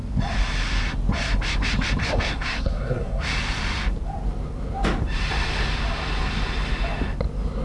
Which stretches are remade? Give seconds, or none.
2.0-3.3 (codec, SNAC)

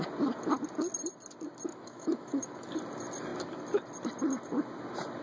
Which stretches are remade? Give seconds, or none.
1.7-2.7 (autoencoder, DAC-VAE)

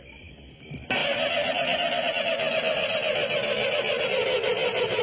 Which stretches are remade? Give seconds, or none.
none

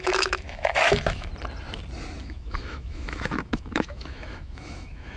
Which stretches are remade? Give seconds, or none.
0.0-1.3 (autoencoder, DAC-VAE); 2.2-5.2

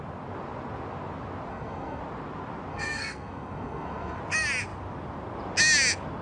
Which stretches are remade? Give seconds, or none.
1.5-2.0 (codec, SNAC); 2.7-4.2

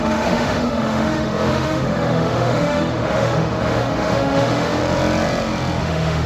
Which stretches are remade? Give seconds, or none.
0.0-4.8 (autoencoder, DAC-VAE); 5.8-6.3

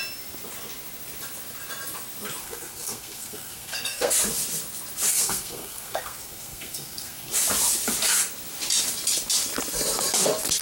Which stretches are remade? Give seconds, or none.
2.4-4.1 (codec, SNAC); 5.1-7.3

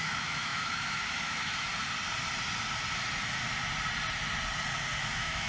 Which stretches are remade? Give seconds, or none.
0.0-1.7 (autoencoder, DAC-VAE); 5.0-5.5